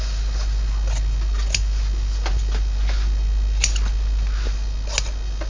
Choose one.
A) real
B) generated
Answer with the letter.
A